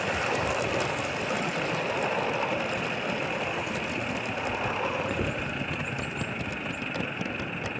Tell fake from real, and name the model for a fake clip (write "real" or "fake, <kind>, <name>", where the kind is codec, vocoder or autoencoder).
real